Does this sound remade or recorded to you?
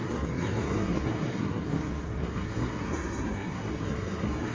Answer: remade